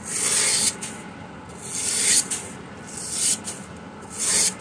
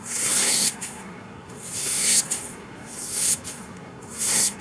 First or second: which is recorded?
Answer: first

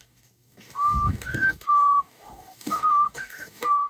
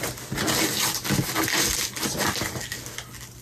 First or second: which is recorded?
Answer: second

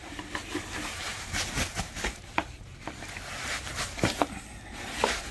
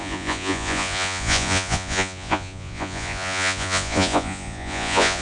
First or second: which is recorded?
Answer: first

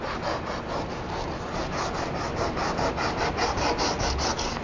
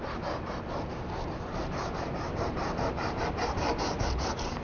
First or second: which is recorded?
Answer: first